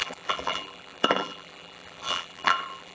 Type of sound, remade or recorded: remade